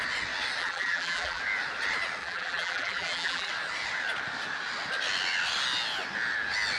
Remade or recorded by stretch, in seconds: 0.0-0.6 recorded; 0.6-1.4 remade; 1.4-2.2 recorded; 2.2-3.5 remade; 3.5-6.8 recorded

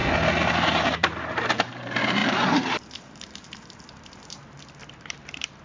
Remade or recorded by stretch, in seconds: 0.0-0.5 recorded; 0.5-5.6 remade

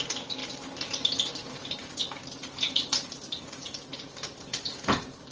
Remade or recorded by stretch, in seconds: 0.0-0.4 remade; 0.4-1.3 recorded; 1.3-1.8 remade; 1.8-3.9 recorded; 3.9-5.3 remade